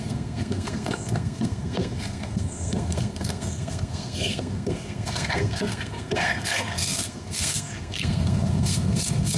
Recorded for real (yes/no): no